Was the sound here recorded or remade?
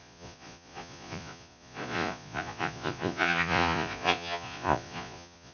remade